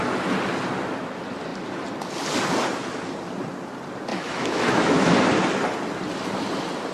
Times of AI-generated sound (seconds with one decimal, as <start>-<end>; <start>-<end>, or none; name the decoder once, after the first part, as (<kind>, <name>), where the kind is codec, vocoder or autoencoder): 4.1-5.1 (autoencoder, DAC-VAE)